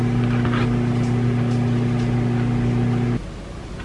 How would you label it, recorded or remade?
recorded